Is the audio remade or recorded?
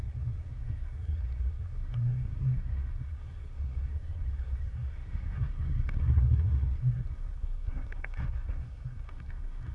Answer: remade